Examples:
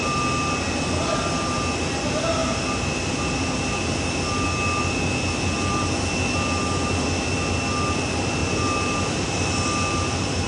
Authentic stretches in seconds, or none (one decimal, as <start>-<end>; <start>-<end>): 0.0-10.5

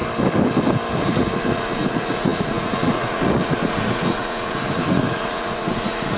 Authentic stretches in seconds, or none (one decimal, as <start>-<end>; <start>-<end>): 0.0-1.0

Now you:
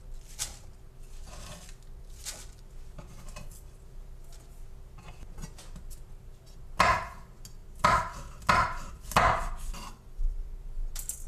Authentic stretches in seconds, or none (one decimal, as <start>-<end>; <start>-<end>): 0.0-11.3